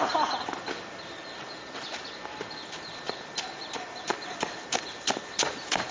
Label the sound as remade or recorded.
recorded